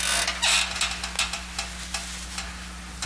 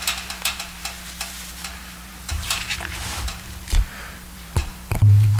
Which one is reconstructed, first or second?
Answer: second